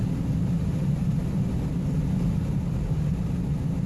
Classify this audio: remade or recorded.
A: recorded